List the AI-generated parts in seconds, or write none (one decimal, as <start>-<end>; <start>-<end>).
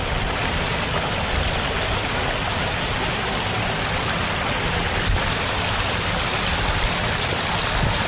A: none